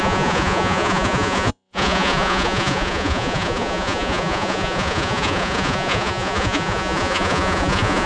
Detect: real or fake fake